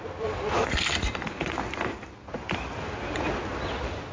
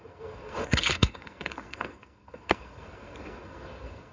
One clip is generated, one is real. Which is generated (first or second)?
second